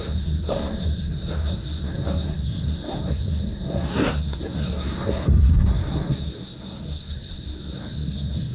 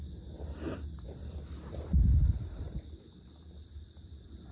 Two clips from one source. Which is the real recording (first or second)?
second